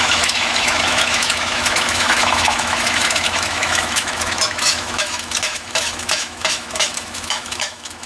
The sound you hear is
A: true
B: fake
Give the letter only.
B